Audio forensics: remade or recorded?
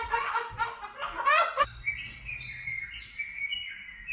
recorded